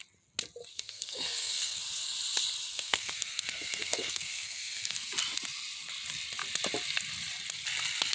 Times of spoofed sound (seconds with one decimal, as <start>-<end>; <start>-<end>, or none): 0.7-1.8; 2.7-5.1

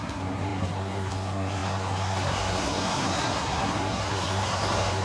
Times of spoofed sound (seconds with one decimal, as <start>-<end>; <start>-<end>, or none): 0.0-5.0